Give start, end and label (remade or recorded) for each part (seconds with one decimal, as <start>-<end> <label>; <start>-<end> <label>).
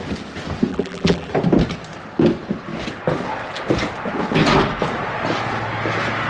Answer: 0.0-0.7 recorded; 0.7-1.3 remade; 1.3-6.3 recorded